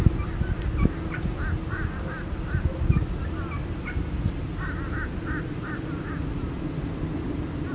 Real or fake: real